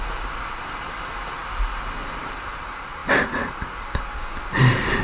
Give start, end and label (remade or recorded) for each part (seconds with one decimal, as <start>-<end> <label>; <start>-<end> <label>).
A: 0.0-5.0 recorded